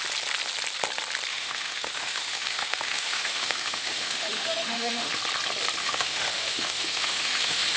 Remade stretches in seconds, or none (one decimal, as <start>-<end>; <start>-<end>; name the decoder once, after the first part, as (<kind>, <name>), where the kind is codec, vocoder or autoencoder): 1.3-5.1 (autoencoder, DAC-VAE); 5.8-7.8